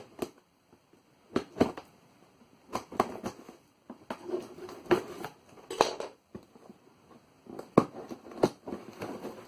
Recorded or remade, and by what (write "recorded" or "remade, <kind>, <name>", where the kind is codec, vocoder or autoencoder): recorded